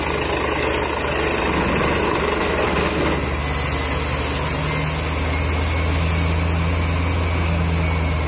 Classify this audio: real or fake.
real